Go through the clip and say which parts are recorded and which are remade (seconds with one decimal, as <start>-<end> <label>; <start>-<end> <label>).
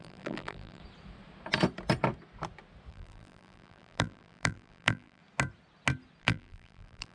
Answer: 0.0-0.8 remade; 0.8-2.9 recorded; 2.9-5.2 remade; 5.2-6.2 recorded; 6.2-7.1 remade